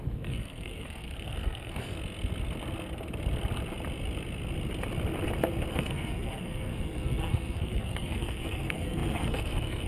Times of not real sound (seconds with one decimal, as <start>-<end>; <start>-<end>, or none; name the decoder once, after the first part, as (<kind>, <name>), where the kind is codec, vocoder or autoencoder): 0.0-1.9 (codec, SNAC); 5.7-9.9